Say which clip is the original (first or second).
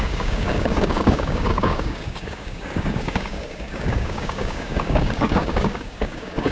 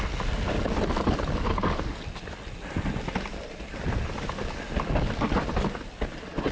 second